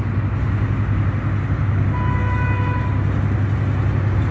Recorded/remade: recorded